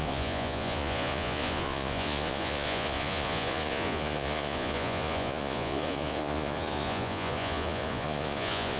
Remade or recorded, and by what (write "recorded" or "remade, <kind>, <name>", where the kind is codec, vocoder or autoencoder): remade, vocoder, Vocos